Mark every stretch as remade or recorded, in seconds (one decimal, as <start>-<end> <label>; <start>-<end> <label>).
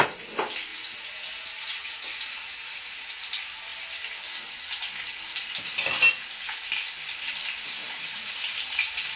0.0-0.7 recorded; 0.7-3.3 remade; 3.3-7.8 recorded; 7.8-8.4 remade; 8.4-9.2 recorded